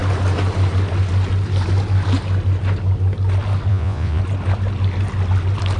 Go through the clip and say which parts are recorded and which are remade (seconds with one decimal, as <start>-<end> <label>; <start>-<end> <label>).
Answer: 0.0-3.7 recorded; 3.7-4.2 remade; 4.2-5.8 recorded